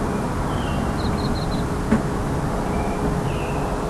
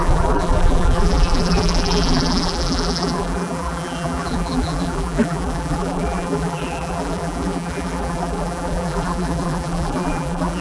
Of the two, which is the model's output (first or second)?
second